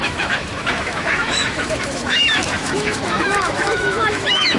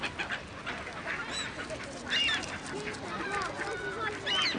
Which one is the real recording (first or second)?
second